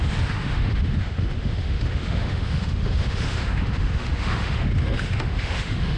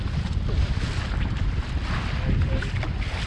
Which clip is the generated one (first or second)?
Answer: first